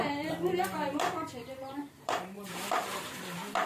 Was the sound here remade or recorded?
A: remade